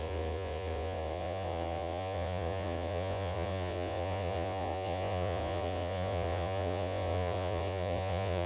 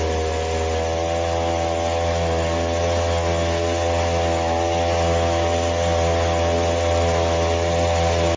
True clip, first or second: second